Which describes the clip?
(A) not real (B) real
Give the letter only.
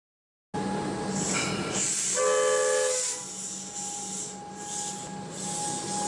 B